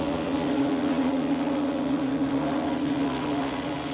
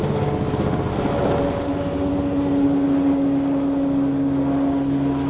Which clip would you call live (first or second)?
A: second